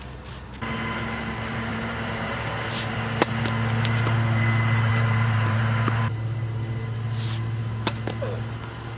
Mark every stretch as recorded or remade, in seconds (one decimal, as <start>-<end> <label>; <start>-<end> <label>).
0.0-1.7 recorded; 1.7-2.3 remade; 2.3-4.9 recorded; 4.9-5.6 remade; 5.6-9.0 recorded